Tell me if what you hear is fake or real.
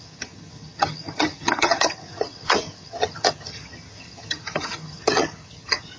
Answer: fake